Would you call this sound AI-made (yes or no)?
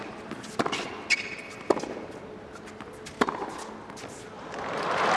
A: no